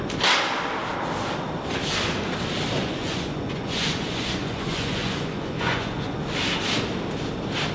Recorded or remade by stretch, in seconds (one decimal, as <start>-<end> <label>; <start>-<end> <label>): 0.0-2.8 recorded; 2.8-6.2 remade; 6.2-7.7 recorded